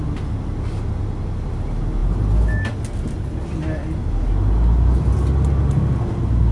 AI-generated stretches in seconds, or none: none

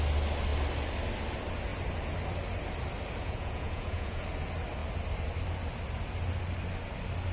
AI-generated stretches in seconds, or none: 3.2-4.2

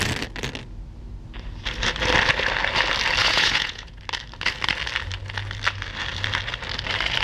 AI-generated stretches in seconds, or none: 3.2-4.0

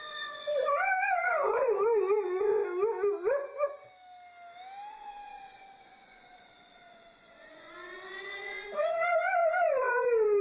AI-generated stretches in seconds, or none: 0.0-2.6; 4.9-10.4

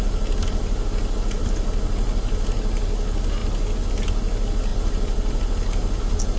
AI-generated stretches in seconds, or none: none

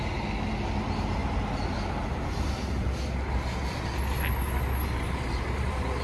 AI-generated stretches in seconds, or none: none